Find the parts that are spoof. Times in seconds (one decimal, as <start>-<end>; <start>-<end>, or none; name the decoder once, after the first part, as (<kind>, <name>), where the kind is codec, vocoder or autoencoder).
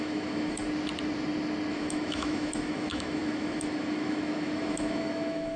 0.0-0.6 (autoencoder, DAC-VAE); 1.7-5.6